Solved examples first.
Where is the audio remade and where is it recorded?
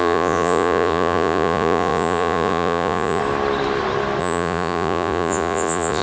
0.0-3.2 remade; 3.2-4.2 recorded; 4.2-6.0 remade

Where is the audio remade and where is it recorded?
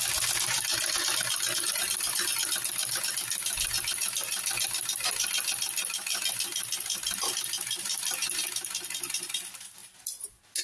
0.0-10.6 recorded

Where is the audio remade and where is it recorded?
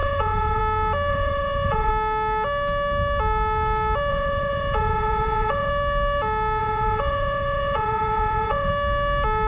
0.0-0.6 remade; 0.6-1.1 recorded; 1.1-1.9 remade; 1.9-4.1 recorded; 4.1-5.7 remade; 5.7-6.6 recorded; 6.6-8.7 remade; 8.7-9.5 recorded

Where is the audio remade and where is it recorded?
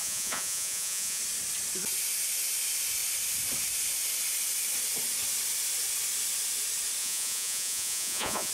0.0-1.2 remade; 1.2-7.0 recorded; 7.0-8.5 remade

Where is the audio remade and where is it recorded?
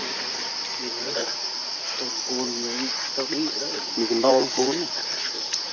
0.0-1.0 recorded; 1.0-1.6 remade; 1.6-4.3 recorded; 4.3-5.7 remade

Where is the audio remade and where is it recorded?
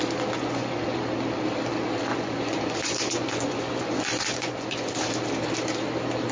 0.0-0.4 recorded; 0.4-1.0 remade; 1.0-2.1 recorded; 2.1-4.9 remade; 4.9-6.3 recorded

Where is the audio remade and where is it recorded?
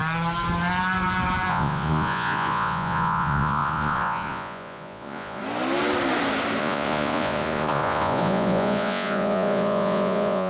0.0-1.5 recorded; 1.5-5.4 remade; 5.4-6.6 recorded; 6.6-10.5 remade